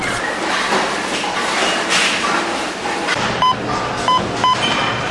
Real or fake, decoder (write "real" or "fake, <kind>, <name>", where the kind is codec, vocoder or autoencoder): real